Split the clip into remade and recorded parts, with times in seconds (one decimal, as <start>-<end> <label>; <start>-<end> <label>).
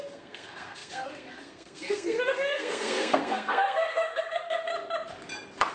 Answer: 0.0-4.7 remade; 4.7-5.7 recorded